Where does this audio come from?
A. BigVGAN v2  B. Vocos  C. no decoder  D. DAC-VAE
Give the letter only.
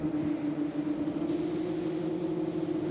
C